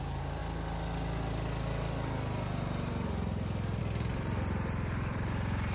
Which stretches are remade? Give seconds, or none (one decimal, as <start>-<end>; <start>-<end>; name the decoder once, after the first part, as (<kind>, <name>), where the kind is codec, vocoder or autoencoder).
0.0-0.4 (vocoder, BigVGAN v2); 3.8-5.7